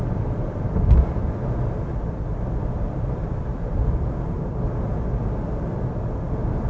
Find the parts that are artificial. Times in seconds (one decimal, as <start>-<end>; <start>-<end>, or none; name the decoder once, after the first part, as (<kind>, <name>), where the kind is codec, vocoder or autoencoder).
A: 0.0-6.7 (vocoder, BigVGAN v2)